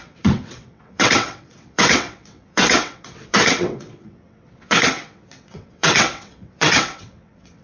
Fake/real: fake